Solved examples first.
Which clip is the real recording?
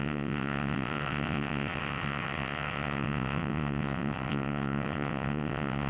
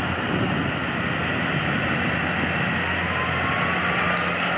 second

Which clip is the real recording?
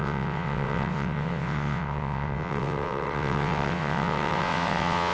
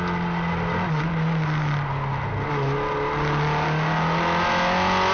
second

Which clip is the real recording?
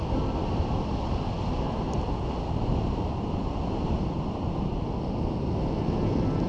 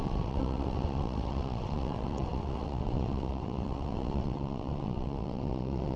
first